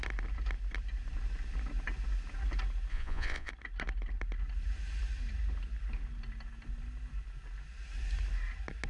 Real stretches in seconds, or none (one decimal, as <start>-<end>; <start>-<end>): 0.0-2.9; 3.5-8.9